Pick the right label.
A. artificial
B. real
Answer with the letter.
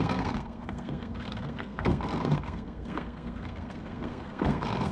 A